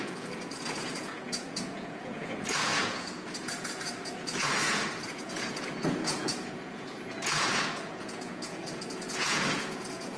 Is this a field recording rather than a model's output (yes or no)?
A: no